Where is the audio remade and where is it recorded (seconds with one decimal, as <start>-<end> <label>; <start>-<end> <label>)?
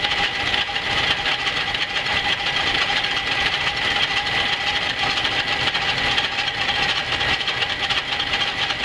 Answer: 0.0-0.7 remade; 0.7-1.5 recorded; 1.5-7.0 remade; 7.0-7.5 recorded; 7.5-8.8 remade